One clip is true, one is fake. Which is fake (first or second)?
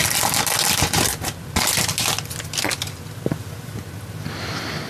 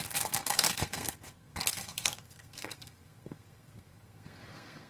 second